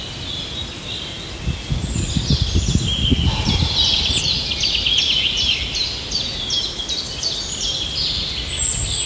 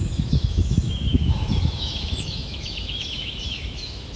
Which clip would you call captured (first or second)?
first